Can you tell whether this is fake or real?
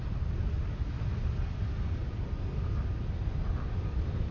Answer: real